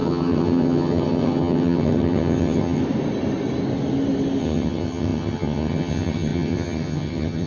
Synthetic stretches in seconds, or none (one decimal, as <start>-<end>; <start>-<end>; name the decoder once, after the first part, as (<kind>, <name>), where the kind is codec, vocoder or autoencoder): 0.0-2.8 (vocoder, HiFi-GAN); 4.4-7.5